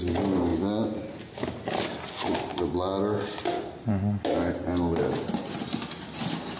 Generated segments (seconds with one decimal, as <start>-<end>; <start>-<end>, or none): none